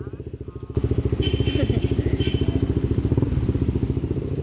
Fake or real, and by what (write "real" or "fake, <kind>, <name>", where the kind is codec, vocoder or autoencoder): real